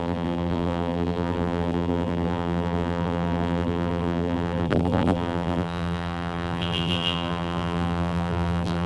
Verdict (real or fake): fake